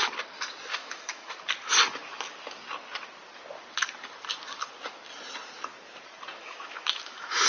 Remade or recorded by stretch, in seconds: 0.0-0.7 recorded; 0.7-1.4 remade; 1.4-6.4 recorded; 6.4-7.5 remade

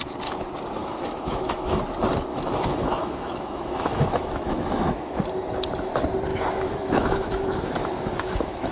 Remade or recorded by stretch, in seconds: 0.0-0.8 recorded; 0.8-1.7 remade; 1.7-2.3 recorded; 2.3-5.2 remade; 5.2-6.3 recorded; 6.3-8.7 remade

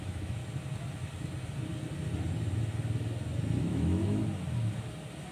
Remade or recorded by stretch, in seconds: 0.0-0.4 remade; 0.4-3.6 recorded; 3.6-4.2 remade; 4.2-5.3 recorded